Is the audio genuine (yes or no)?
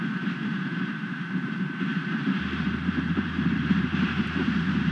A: no